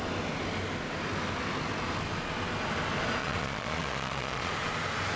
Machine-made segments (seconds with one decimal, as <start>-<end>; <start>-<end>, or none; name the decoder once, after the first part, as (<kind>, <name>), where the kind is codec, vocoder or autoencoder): 3.2-4.5 (vocoder, Vocos)